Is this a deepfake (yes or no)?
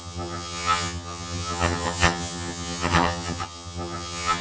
yes